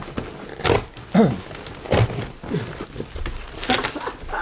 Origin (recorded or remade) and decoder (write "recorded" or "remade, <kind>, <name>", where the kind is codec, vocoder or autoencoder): recorded